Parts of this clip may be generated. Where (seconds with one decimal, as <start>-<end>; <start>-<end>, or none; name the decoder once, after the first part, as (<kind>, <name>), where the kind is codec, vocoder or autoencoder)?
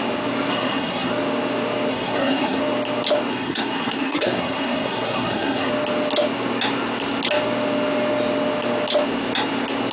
0.5-1.1 (codec, SNAC); 1.9-2.6; 3.3-5.7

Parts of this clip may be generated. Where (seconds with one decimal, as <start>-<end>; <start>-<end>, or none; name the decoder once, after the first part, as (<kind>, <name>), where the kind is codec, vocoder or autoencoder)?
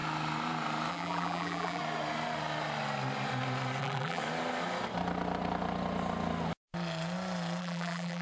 0.9-1.8 (vocoder, BigVGAN v2); 3.8-4.2; 7.6-8.2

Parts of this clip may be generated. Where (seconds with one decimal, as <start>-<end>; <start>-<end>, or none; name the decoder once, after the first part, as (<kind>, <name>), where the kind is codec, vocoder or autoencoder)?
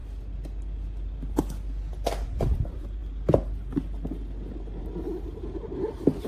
none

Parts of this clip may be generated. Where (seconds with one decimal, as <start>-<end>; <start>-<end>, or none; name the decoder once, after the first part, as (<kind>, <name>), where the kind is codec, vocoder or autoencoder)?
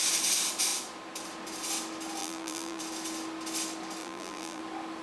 2.2-2.8 (vocoder, BigVGAN v2); 4.0-4.6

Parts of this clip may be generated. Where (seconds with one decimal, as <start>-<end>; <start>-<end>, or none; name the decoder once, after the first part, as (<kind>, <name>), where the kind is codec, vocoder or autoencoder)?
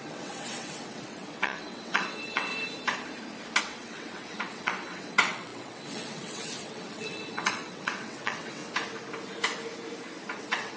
0.0-2.5 (vocoder, WaveNeXt); 3.6-8.6; 10.4-10.8